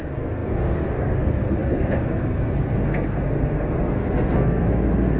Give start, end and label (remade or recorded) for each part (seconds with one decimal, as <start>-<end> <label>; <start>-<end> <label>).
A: 0.0-5.2 remade